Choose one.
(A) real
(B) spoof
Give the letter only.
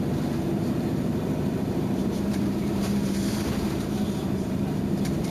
B